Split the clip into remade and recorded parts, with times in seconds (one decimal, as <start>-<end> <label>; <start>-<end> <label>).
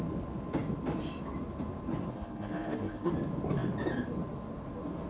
0.0-2.1 recorded; 2.1-3.1 remade; 3.1-5.1 recorded